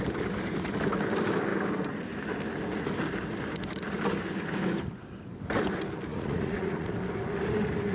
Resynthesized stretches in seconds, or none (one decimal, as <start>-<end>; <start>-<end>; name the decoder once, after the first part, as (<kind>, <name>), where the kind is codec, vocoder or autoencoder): 6.1-6.9 (vocoder, Vocos)